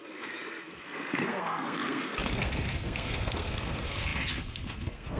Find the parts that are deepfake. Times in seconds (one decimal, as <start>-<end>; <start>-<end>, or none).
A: 0.0-5.2